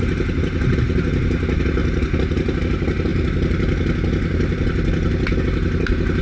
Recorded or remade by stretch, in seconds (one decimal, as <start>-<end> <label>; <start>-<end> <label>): 0.0-6.2 recorded